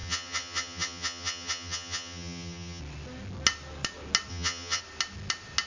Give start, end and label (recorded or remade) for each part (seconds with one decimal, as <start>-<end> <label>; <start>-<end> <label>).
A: 0.0-2.8 remade; 2.8-4.3 recorded; 4.3-4.8 remade; 4.8-5.7 recorded